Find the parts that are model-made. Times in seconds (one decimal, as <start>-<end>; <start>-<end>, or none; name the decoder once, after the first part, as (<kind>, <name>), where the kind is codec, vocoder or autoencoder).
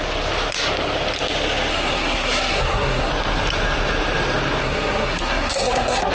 1.7-3.1 (codec, SNAC); 4.6-6.1